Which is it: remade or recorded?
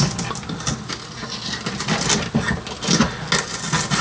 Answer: recorded